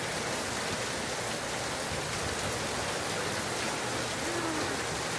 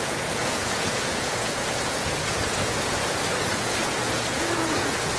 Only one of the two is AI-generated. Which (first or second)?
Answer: second